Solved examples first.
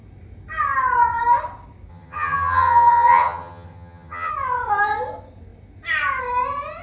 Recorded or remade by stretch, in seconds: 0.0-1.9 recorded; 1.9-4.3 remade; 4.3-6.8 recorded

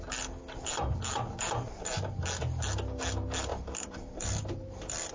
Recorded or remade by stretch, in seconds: 0.0-3.5 recorded; 3.5-4.4 remade; 4.4-5.1 recorded

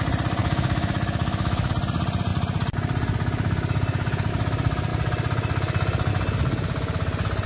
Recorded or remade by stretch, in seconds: 0.0-0.4 recorded; 0.4-1.7 remade; 1.7-7.5 recorded

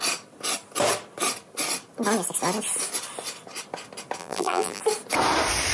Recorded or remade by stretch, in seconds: 0.0-4.2 recorded; 4.2-4.8 remade; 4.8-5.7 recorded

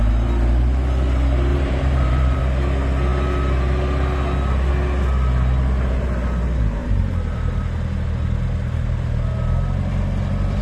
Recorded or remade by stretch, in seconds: 0.0-1.5 recorded; 1.5-2.4 remade; 2.4-6.8 recorded; 6.8-7.6 remade; 7.6-10.6 recorded

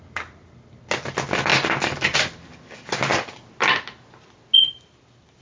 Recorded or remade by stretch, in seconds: 0.0-5.4 recorded